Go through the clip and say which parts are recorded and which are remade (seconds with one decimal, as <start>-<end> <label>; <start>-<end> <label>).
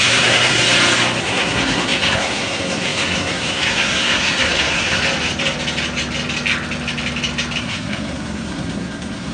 0.0-0.6 remade; 0.6-1.2 recorded; 1.2-5.0 remade; 5.0-7.6 recorded; 7.6-9.3 remade